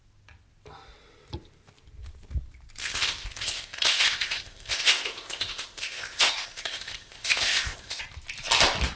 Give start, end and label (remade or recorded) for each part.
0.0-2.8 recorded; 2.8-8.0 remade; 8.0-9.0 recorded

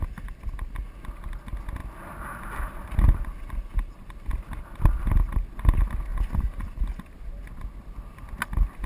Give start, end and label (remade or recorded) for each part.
0.0-1.8 recorded; 1.8-4.4 remade; 4.4-6.1 recorded; 6.1-6.8 remade; 6.8-8.9 recorded